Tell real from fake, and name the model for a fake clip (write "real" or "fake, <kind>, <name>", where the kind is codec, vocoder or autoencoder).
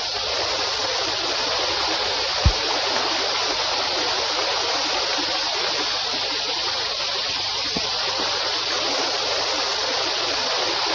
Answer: real